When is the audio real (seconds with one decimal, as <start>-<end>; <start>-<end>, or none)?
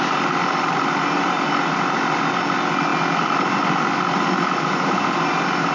0.0-5.7